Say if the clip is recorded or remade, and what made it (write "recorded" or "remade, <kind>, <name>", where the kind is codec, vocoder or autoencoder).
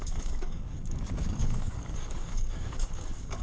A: remade, codec, DAC